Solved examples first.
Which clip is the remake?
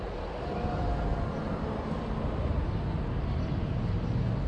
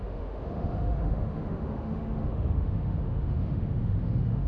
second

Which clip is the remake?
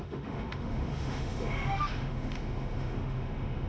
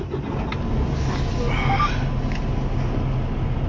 first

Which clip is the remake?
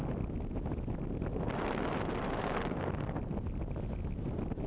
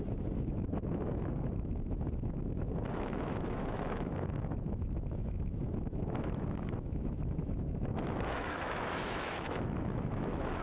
second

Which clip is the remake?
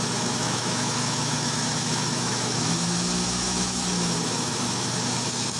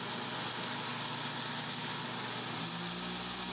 first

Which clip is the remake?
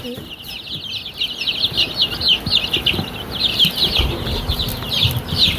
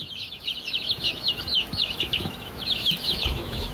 second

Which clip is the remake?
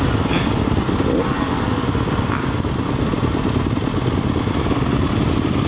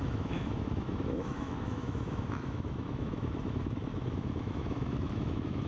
second